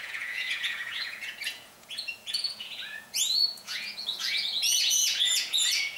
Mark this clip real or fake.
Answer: fake